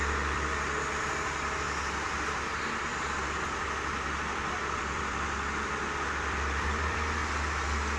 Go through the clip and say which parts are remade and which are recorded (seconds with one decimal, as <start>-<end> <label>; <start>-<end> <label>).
0.0-7.2 remade; 7.2-8.0 recorded